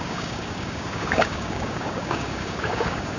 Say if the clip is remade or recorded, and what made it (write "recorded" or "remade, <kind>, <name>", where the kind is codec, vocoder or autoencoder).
remade, codec, DAC